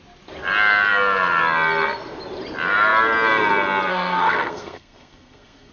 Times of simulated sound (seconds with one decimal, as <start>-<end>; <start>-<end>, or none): 3.9-5.7